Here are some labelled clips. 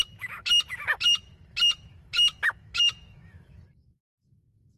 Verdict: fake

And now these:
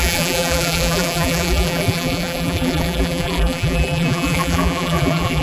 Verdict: fake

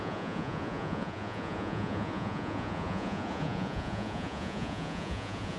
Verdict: fake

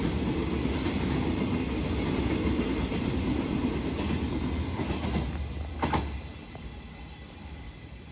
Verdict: real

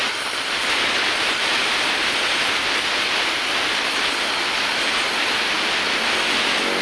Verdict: real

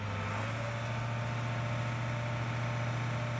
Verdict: real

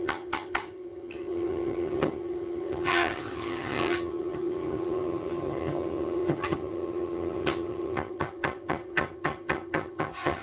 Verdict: fake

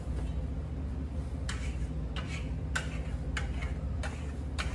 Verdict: real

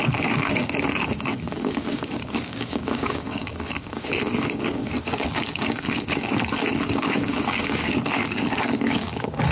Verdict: fake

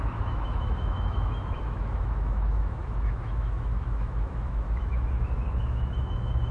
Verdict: fake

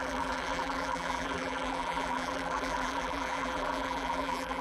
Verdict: fake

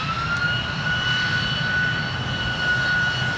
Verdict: real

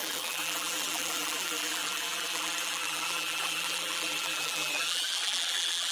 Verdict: fake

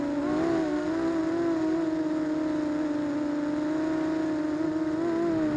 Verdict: real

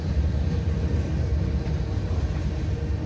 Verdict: real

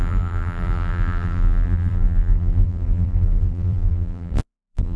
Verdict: fake